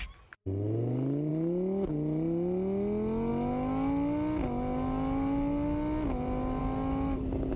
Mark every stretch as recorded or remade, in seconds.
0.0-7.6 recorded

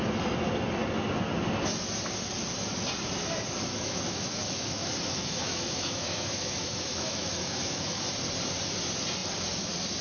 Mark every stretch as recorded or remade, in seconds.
0.0-3.7 recorded; 3.7-8.0 remade; 8.0-10.0 recorded